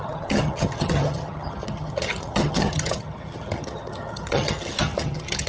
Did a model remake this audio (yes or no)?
yes